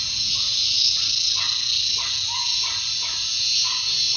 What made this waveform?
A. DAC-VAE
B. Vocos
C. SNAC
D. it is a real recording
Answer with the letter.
D